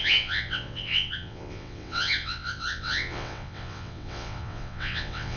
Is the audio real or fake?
fake